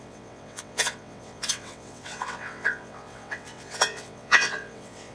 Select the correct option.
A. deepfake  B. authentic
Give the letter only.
A